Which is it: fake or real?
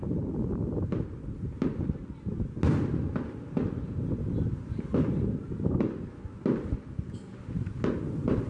real